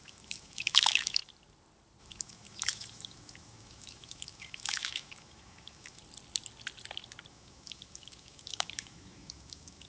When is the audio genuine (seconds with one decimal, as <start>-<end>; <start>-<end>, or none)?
1.2-2.0; 6.0-7.3